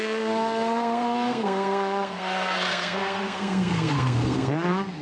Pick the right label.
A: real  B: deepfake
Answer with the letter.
B